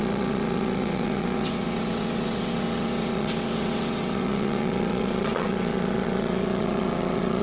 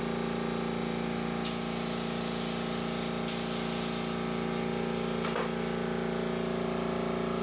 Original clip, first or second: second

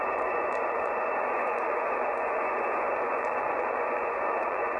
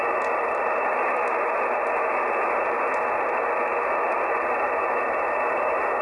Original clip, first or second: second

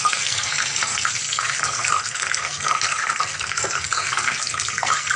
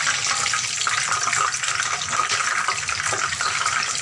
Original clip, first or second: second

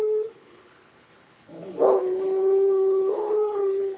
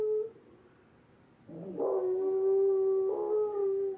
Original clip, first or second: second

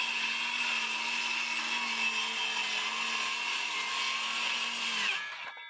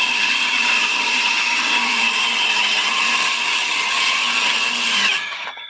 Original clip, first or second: first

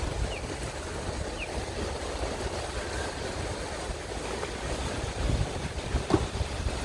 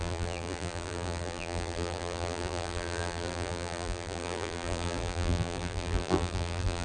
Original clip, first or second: first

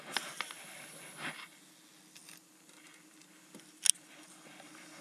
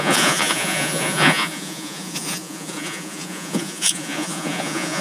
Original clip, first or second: first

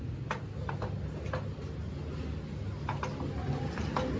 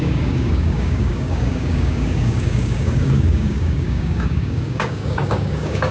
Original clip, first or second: first